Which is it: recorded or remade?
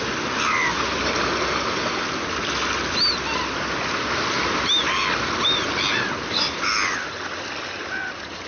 recorded